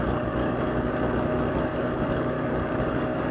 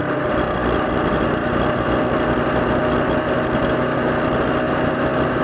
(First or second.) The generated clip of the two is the first